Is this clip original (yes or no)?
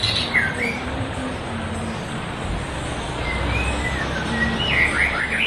yes